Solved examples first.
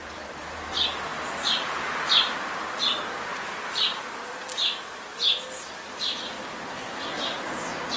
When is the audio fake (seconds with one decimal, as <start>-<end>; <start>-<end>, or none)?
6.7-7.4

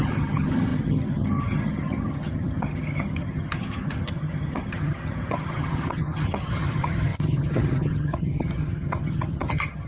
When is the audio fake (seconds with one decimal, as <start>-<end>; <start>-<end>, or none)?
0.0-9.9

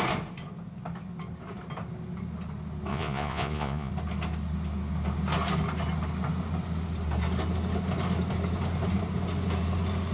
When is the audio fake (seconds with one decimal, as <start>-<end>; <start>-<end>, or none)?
2.9-3.9

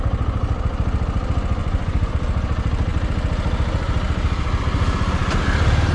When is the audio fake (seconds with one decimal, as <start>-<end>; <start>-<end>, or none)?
1.6-2.1

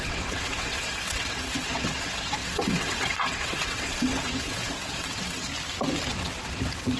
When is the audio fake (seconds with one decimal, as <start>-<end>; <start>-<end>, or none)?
0.0-5.5; 6.1-7.0